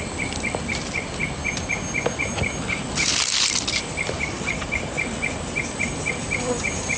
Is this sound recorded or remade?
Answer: recorded